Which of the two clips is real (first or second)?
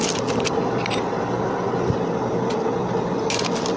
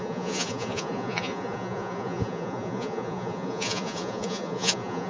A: first